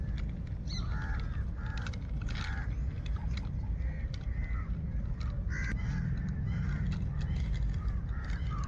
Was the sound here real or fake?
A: real